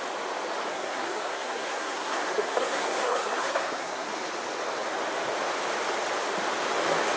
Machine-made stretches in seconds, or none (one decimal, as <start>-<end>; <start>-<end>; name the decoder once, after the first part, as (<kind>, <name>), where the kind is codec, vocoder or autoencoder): 0.7-4.1 (codec, SNAC)